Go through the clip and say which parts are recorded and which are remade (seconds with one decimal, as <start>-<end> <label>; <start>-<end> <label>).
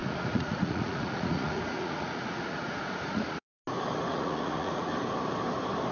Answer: 0.0-3.6 remade; 3.6-4.1 recorded; 4.1-4.9 remade; 4.9-5.9 recorded